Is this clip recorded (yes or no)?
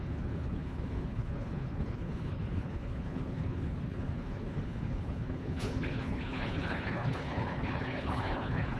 no